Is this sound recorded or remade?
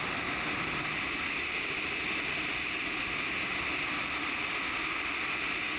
recorded